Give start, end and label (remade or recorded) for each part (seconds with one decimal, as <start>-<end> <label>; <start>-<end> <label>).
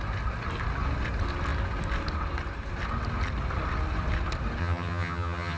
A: 0.0-4.6 recorded; 4.6-5.6 remade